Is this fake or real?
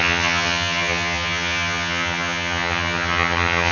fake